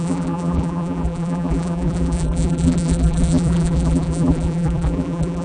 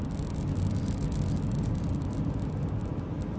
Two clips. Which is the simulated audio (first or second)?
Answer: first